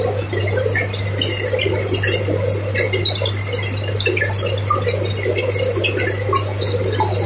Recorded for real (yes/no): yes